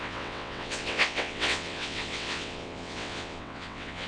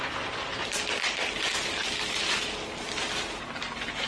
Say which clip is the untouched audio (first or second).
second